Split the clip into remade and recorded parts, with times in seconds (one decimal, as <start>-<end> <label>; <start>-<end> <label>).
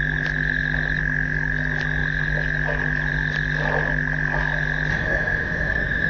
0.0-4.9 recorded; 4.9-6.1 remade